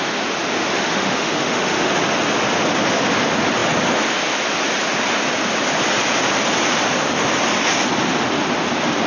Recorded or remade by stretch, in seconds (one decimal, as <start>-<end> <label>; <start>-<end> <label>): 0.0-0.6 recorded; 0.6-1.9 remade; 1.9-9.1 recorded